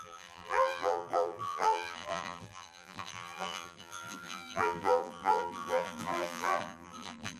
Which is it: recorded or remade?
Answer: remade